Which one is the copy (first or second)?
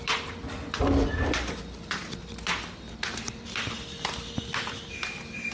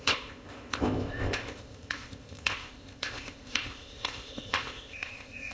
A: second